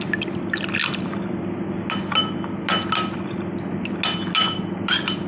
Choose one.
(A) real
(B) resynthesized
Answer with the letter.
A